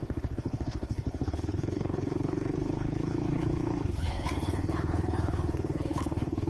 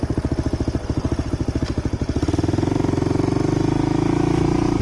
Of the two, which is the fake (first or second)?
first